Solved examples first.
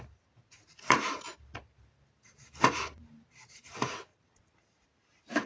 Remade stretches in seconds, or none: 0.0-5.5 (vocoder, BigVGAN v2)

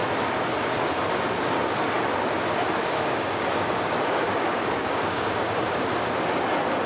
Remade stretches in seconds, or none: 2.8-5.9 (codec, DAC)

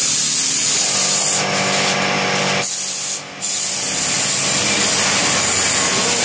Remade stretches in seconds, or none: none

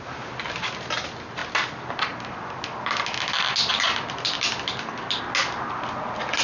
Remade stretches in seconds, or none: none